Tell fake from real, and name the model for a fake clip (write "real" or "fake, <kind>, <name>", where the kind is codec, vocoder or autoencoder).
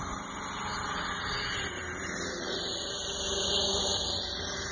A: fake, vocoder, BigVGAN v2